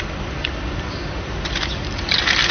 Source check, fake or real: real